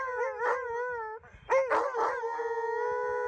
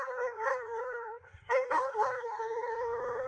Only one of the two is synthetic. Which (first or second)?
second